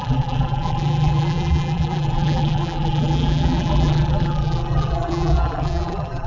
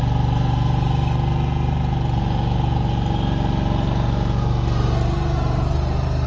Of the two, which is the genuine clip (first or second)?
second